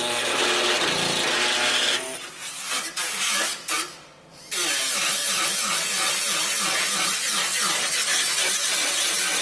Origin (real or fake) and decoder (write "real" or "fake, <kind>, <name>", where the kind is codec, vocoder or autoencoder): real